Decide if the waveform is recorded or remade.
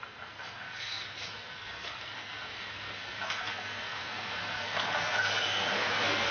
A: remade